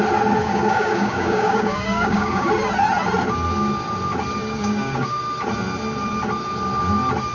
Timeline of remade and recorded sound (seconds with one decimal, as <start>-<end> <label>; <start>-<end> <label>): 0.0-0.4 recorded; 0.4-2.5 remade; 2.5-4.4 recorded; 4.4-5.2 remade; 5.2-7.3 recorded